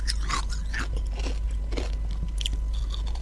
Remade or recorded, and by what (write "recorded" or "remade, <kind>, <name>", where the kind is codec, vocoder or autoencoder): recorded